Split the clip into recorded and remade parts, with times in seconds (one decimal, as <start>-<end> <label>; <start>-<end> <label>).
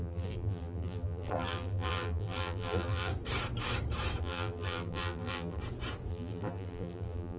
0.0-3.1 remade; 3.1-4.2 recorded; 4.2-5.6 remade; 5.6-6.1 recorded; 6.1-7.4 remade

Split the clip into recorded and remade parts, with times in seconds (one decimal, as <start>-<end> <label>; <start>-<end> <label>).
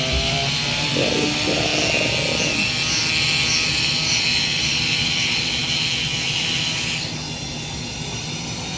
0.0-1.7 remade; 1.7-3.7 recorded; 3.7-5.6 remade; 5.6-7.7 recorded; 7.7-8.8 remade